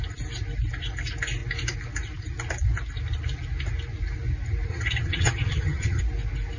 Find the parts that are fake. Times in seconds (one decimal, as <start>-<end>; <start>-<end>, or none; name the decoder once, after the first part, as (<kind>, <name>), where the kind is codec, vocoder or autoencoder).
4.7-6.0 (vocoder, HiFi-GAN)